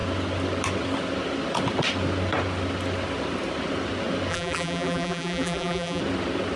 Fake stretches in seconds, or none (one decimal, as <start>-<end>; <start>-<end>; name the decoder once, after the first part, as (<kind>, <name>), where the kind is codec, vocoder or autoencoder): 4.3-6.0 (vocoder, BigVGAN v2)